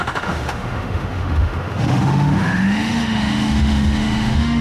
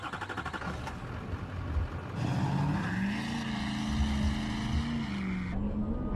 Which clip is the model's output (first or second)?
first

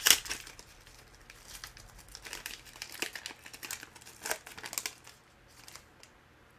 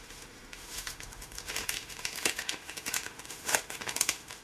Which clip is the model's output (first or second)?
second